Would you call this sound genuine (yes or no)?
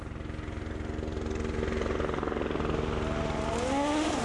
yes